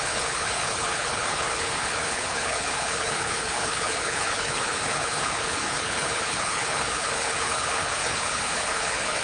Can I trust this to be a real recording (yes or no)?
no